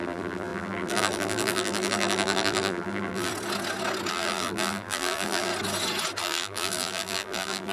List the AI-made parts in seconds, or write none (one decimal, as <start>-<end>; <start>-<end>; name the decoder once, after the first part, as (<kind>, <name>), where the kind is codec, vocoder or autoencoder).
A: 0.0-3.3 (vocoder, BigVGAN v2); 4.1-5.5; 6.2-7.7

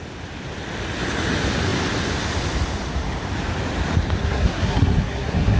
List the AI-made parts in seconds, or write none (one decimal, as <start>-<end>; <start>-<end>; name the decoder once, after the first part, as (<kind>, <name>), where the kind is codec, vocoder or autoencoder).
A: 4.2-5.6 (codec, SNAC)

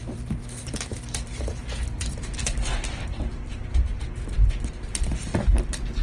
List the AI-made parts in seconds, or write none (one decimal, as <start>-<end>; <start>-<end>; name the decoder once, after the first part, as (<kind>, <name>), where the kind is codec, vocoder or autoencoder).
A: 0.0-1.6 (vocoder, BigVGAN v2); 2.4-3.9; 4.7-6.0

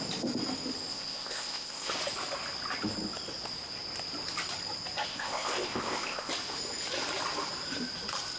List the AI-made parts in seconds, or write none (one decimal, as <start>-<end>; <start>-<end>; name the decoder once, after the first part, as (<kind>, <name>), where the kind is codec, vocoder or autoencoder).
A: 0.9-1.9 (codec, ZipCodec); 5.1-6.3

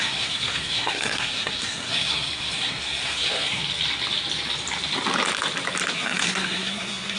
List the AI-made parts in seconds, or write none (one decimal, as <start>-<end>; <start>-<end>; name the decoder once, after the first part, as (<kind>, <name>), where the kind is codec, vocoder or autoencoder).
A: 0.0-3.6 (codec, SNAC); 5.9-7.2